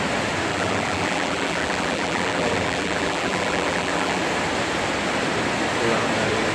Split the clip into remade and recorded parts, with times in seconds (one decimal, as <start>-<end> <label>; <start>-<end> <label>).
0.0-0.5 recorded; 0.5-4.2 remade; 4.2-6.5 recorded

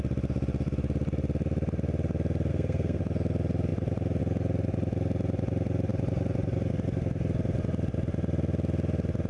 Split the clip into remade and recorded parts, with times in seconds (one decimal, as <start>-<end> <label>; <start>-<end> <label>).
0.0-2.5 recorded; 2.5-3.0 remade; 3.0-9.3 recorded

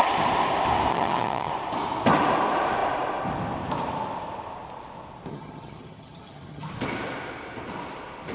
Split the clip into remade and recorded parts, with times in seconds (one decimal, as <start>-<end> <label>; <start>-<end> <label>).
0.0-0.9 recorded; 0.9-1.5 remade; 1.5-5.3 recorded; 5.3-6.7 remade; 6.7-8.3 recorded

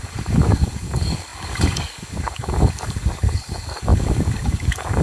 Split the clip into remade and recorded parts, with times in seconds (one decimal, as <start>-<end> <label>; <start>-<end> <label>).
0.0-5.0 remade

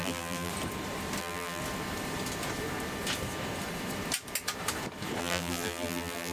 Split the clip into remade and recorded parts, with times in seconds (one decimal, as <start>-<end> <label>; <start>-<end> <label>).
0.0-0.5 remade; 0.5-1.2 recorded; 1.2-1.6 remade; 1.6-5.2 recorded; 5.2-6.3 remade

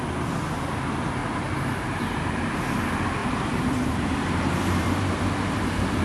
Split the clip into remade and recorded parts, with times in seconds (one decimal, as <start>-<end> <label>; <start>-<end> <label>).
0.0-1.2 recorded; 1.2-2.8 remade; 2.8-3.2 recorded; 3.2-6.0 remade

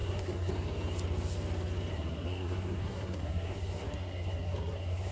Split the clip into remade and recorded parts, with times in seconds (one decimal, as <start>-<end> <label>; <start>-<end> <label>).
0.0-0.5 remade; 0.5-1.9 recorded; 1.9-5.1 remade